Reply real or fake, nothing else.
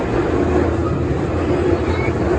real